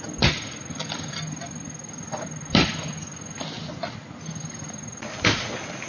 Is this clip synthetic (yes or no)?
no